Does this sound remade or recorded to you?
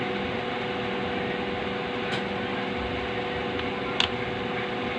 recorded